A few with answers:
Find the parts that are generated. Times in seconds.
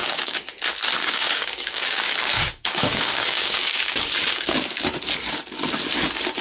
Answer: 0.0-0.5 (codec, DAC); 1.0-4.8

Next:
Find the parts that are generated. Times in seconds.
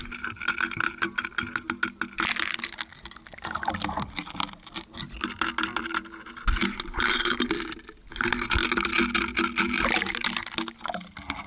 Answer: none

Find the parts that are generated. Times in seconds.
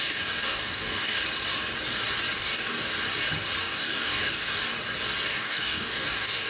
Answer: 0.0-1.2 (codec, DAC); 2.4-2.9; 3.6-4.6; 5.3-6.5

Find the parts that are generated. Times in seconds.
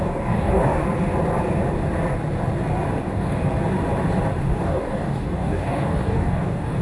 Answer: 0.0-0.8 (codec, DAC); 3.0-3.4; 4.4-6.8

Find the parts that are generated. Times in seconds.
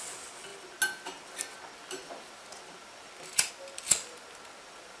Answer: none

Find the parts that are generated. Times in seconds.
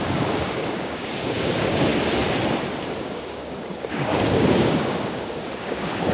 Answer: 0.0-1.9 (codec, DAC); 3.0-6.1